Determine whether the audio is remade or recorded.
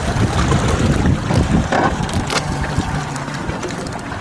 recorded